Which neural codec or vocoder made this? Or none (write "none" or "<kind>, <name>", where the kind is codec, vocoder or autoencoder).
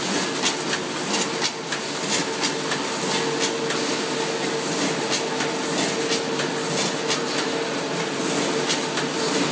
none